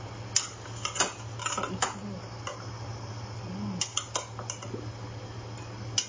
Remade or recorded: recorded